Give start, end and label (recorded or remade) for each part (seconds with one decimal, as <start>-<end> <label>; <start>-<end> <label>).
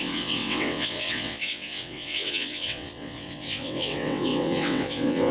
0.0-5.3 remade